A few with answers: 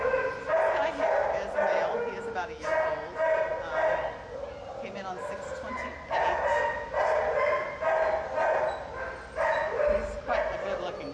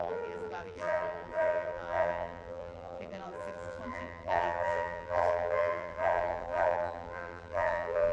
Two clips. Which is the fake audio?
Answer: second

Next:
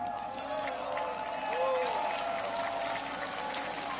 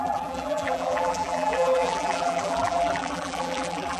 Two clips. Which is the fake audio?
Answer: second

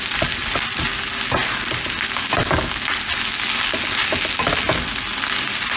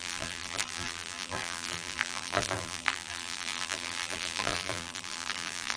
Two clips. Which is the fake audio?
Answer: second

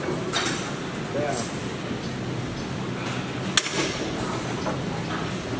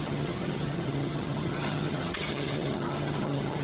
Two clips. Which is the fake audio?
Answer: second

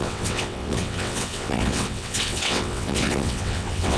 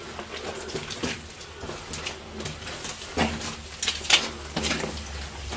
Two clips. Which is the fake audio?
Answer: first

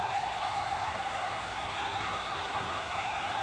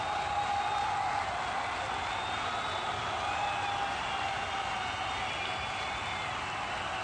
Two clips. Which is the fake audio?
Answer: first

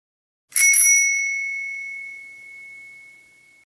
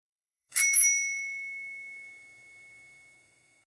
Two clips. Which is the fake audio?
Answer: second